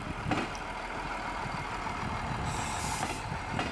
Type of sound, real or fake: real